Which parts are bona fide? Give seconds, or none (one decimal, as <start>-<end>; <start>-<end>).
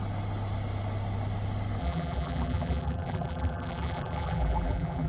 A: 0.0-1.8